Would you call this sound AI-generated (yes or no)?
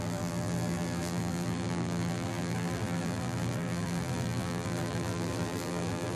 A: yes